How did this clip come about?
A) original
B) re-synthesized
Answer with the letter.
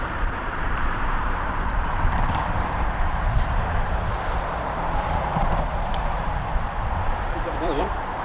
B